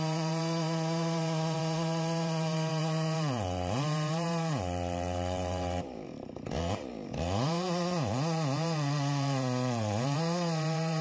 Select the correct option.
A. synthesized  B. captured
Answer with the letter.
A